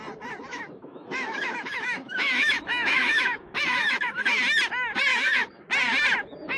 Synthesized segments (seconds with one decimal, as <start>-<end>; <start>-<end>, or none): 0.5-4.4; 5.1-5.7